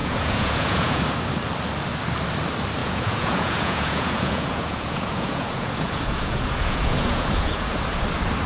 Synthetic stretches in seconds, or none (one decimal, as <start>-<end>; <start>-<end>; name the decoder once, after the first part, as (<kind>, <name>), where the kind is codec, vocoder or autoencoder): 0.0-1.0 (vocoder, Vocos); 2.8-7.7